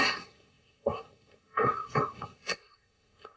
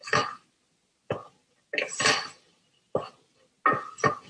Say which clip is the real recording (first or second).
second